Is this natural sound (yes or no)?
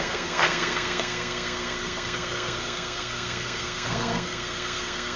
no